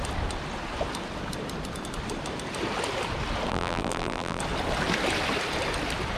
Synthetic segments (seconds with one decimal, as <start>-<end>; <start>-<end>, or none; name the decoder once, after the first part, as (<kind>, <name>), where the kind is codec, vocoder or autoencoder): 3.5-4.4 (vocoder, BigVGAN v2)